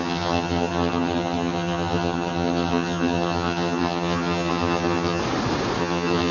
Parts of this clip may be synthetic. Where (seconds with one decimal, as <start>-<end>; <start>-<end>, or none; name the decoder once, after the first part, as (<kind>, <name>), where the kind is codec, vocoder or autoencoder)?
0.0-5.2 (vocoder, HiFi-GAN); 5.8-6.3